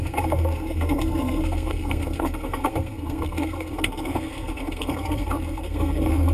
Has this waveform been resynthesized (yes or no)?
yes